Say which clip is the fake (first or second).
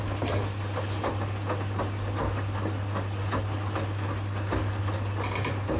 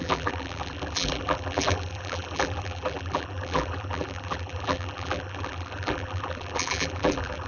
second